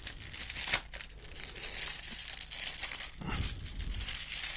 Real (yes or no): yes